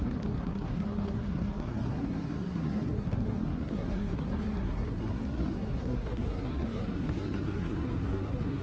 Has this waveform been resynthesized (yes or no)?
yes